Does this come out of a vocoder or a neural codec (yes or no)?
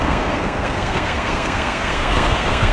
yes